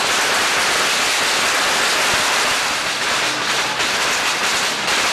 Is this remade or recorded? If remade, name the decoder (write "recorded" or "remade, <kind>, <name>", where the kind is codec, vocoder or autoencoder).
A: recorded